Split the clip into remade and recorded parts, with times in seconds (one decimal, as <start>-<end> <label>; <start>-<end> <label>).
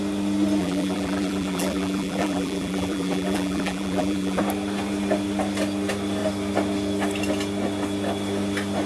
0.0-0.6 recorded; 0.6-4.4 remade; 4.4-8.9 recorded